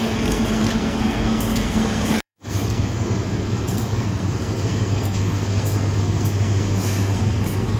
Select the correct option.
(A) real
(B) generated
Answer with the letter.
B